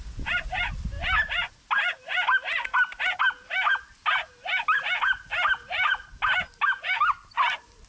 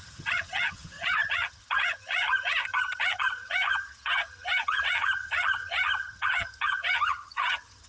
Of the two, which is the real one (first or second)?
first